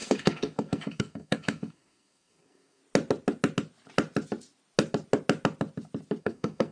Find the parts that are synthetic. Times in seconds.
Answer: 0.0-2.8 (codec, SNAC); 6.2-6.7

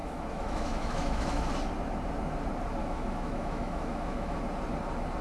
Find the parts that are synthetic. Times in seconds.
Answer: 0.0-1.5 (autoencoder, DAC-VAE); 2.8-4.4

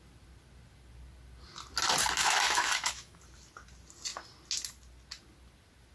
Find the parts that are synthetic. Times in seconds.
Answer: 2.2-3.2 (autoencoder, DAC-VAE)

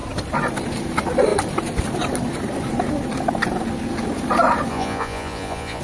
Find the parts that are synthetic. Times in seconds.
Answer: 4.7-5.8 (vocoder, Vocos)

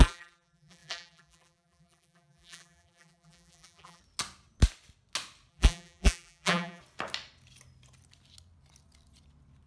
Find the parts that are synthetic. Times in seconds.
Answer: 0.0-4.0 (vocoder, BigVGAN v2); 5.5-6.8

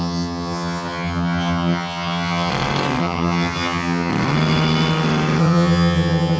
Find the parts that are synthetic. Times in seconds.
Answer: 0.0-2.5 (vocoder, HiFi-GAN); 3.0-4.1; 5.4-6.4

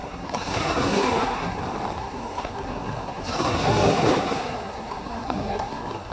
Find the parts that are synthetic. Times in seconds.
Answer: 0.0-1.6 (codec, SNAC); 2.0-6.1